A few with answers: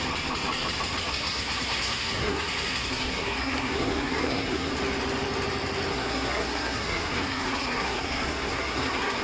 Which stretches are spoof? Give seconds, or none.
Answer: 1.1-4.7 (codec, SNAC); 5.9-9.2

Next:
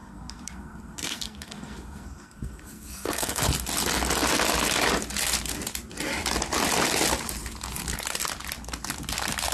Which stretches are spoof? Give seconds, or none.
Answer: 0.0-3.5 (codec, SNAC)